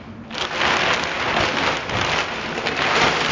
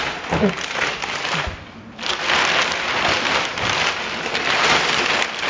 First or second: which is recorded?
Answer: first